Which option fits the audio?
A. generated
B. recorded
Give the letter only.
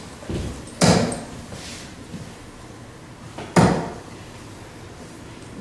B